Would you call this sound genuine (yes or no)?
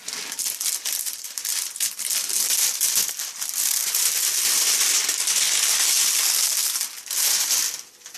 yes